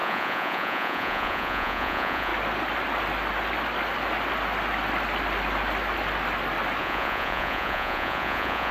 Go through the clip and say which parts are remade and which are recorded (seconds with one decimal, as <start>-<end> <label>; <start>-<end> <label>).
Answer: 0.0-2.3 remade; 2.3-6.8 recorded; 6.8-8.7 remade